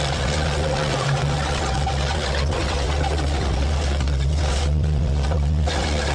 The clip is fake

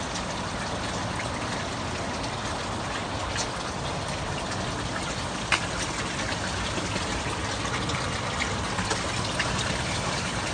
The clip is real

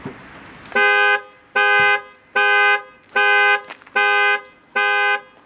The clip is real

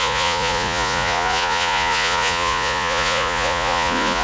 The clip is fake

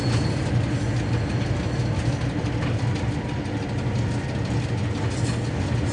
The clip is real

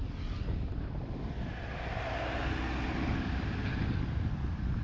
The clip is real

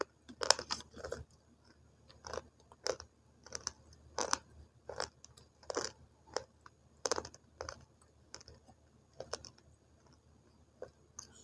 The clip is real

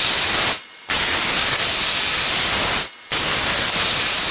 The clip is real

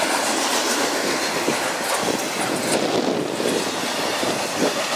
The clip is real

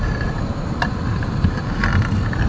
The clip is real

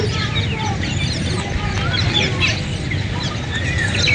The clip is real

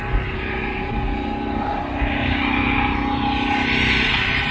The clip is real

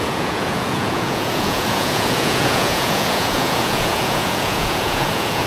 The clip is fake